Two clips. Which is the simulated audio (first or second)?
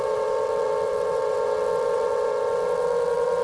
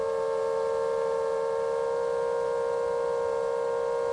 first